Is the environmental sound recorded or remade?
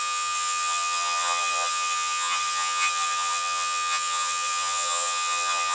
remade